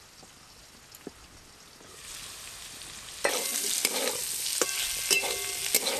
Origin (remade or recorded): recorded